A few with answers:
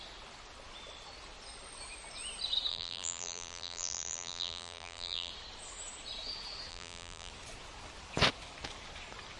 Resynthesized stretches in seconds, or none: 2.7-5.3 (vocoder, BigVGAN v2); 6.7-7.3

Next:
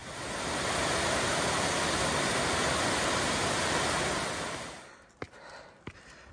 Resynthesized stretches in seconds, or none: none

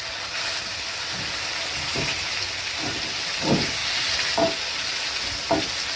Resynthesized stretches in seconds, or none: none

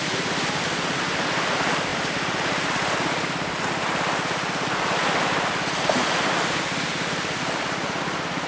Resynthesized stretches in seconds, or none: none

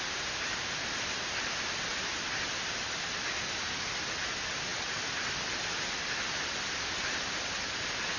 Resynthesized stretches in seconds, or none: none

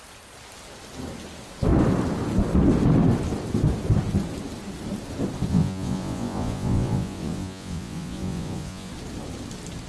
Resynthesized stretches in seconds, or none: 5.5-8.9 (vocoder, Vocos)

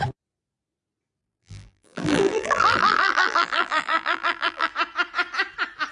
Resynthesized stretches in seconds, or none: 1.2-4.7 (vocoder, BigVGAN v2)

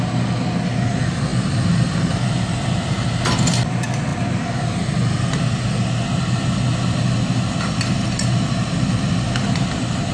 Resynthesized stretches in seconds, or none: none